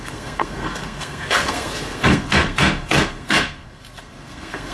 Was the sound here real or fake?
fake